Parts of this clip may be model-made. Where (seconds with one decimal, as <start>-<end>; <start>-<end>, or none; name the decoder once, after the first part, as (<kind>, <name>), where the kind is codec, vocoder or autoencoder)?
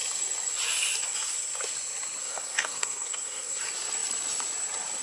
2.2-3.6 (codec, SNAC)